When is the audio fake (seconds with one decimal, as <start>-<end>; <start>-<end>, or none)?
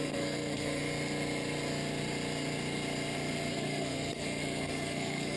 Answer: 0.0-0.8; 3.5-5.4